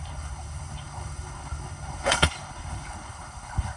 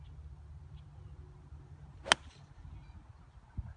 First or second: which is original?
second